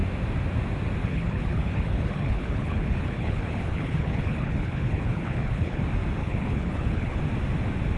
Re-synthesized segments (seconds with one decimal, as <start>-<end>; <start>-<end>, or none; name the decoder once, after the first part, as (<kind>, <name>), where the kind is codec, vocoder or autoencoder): 1.0-5.8 (codec, HILCodec); 6.2-7.2

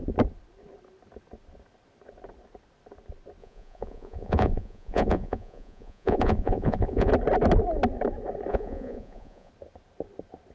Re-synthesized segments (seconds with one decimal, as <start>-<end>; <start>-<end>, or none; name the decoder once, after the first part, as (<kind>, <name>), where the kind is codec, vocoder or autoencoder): 3.4-7.1 (vocoder, Vocos); 8.5-9.5

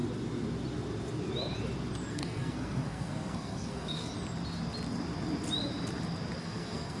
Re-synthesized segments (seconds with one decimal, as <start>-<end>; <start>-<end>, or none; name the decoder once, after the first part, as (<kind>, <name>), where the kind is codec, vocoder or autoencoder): 2.1-4.1 (codec, SNAC); 6.4-7.0

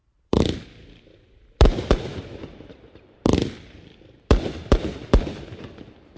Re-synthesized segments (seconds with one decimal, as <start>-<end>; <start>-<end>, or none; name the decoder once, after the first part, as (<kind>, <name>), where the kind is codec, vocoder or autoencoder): 0.0-6.2 (vocoder, BigVGAN v2)